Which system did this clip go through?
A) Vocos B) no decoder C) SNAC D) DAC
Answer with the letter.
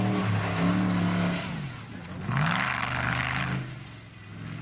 B